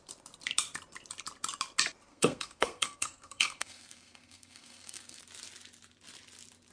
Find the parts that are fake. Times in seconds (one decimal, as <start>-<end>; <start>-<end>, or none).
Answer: 2.1-5.2